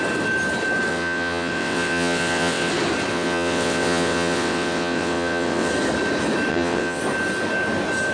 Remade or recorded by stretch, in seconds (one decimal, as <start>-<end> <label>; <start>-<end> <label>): 0.0-0.9 recorded; 0.9-2.7 remade; 2.7-3.1 recorded; 3.1-5.7 remade; 5.7-6.5 recorded; 6.5-7.0 remade; 7.0-8.1 recorded